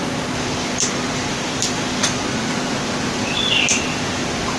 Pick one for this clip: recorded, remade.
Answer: recorded